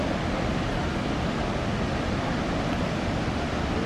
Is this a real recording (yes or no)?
yes